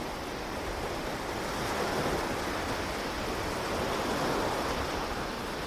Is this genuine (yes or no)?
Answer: yes